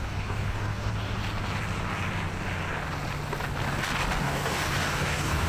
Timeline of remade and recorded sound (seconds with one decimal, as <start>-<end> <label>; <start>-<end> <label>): 0.0-0.9 remade; 0.9-4.2 recorded; 4.2-5.5 remade